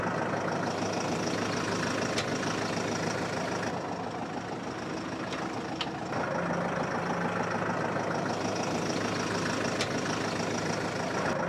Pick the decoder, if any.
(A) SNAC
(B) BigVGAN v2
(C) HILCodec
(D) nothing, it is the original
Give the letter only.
D